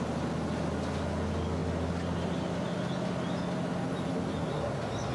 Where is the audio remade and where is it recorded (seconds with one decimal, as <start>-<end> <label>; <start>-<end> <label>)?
0.0-5.1 recorded